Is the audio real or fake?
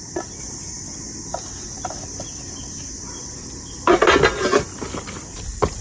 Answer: real